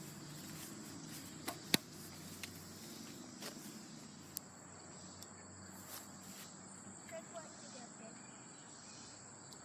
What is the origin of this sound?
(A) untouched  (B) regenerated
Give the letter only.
A